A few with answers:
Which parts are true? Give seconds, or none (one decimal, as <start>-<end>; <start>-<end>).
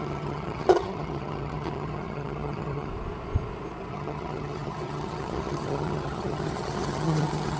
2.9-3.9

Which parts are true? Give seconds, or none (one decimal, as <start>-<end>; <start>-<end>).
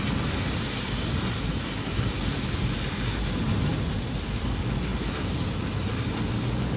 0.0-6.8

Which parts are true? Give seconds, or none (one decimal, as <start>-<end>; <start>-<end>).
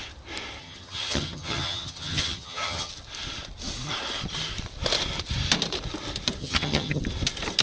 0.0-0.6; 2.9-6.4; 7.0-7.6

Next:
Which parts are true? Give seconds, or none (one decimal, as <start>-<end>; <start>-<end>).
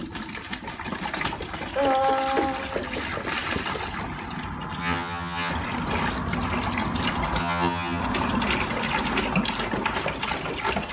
0.0-4.8; 5.5-7.4; 8.0-10.9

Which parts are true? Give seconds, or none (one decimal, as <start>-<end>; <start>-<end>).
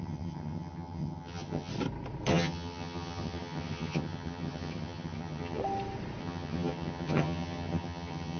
1.7-2.3; 5.6-6.2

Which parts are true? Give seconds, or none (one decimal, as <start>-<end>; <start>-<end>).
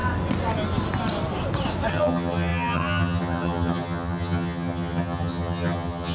0.0-1.9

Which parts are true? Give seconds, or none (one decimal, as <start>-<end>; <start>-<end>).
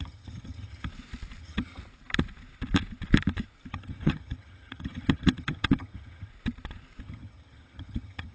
0.9-1.4; 1.8-3.7; 6.3-7.0